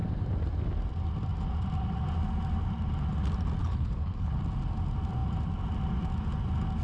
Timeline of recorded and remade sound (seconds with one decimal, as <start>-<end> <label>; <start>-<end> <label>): 0.0-3.6 recorded; 3.6-4.4 remade; 4.4-6.8 recorded